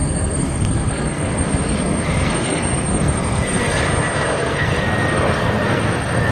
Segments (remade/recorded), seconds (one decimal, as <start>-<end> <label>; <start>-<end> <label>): 0.0-3.8 remade; 3.8-4.4 recorded; 4.4-6.3 remade